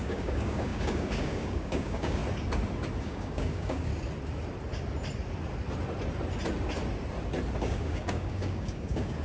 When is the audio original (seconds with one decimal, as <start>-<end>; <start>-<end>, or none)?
2.2-3.0; 3.9-7.6